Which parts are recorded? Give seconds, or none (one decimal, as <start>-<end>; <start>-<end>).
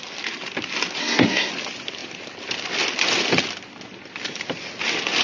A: 0.0-1.0; 1.5-5.2